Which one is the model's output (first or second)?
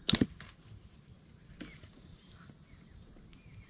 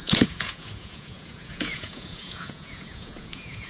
second